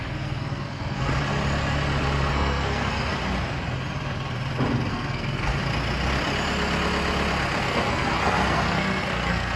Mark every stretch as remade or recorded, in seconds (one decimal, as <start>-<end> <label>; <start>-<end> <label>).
0.0-1.1 remade; 1.1-2.3 recorded; 2.3-3.1 remade; 3.1-4.9 recorded; 4.9-5.6 remade; 5.6-7.6 recorded; 7.6-9.6 remade

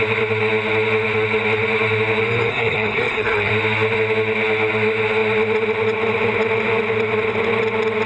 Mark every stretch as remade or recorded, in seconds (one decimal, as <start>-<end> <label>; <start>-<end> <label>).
0.0-2.5 recorded; 2.5-3.5 remade; 3.5-8.1 recorded